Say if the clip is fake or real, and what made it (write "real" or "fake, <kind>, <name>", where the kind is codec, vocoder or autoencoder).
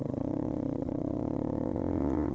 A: fake, vocoder, Vocos